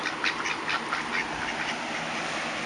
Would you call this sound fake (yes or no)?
no